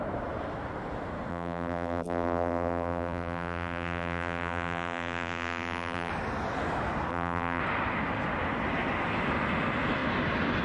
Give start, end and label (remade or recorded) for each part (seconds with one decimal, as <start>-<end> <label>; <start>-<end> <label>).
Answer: 0.0-1.3 recorded; 1.3-6.1 remade; 6.1-7.1 recorded; 7.1-7.6 remade; 7.6-10.6 recorded